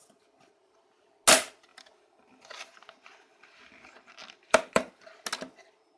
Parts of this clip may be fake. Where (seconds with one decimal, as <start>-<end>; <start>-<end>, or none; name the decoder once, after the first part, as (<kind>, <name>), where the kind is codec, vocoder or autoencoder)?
1.7-4.9 (vocoder, BigVGAN v2)